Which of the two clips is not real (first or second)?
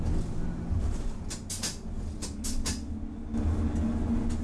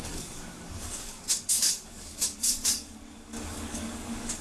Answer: second